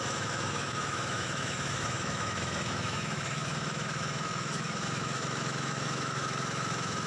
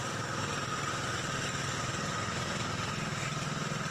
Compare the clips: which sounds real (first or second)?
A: second